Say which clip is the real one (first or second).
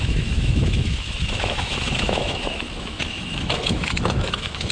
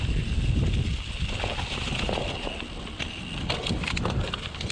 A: second